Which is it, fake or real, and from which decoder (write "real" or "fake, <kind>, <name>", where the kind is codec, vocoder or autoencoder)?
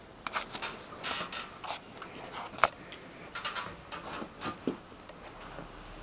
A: real